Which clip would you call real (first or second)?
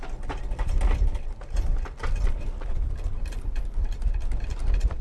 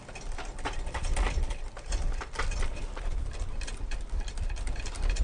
first